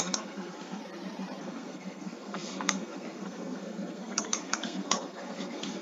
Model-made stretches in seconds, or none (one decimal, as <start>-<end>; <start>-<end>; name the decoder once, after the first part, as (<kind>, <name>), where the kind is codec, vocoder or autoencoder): 0.0-0.8 (codec, SNAC); 1.4-5.8

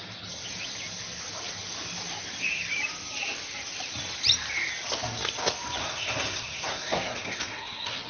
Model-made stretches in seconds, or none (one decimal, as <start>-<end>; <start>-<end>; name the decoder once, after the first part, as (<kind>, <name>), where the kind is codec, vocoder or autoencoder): 5.8-8.1 (codec, SNAC)

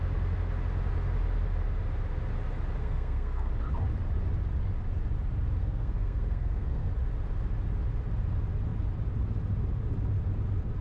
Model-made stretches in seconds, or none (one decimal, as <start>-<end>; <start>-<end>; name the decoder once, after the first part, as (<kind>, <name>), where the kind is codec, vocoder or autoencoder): 2.8-3.5 (codec, SNAC); 5.6-6.9

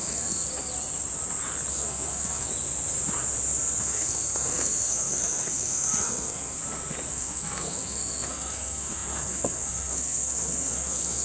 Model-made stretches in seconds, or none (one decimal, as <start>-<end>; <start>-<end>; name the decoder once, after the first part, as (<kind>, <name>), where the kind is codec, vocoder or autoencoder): 0.0-0.5 (codec, SNAC); 1.7-2.5; 3.8-6.6; 7.1-11.2

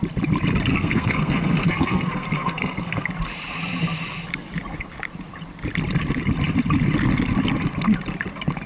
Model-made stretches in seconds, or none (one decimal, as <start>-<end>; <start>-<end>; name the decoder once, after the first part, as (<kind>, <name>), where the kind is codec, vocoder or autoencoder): 0.7-3.1 (codec, SNAC)

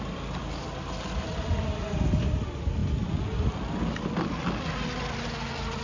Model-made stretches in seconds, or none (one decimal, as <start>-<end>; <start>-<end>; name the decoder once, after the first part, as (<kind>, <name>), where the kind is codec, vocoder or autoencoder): none